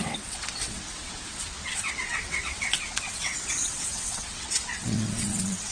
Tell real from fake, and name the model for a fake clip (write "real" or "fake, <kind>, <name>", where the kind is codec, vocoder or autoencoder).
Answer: fake, vocoder, WaveNeXt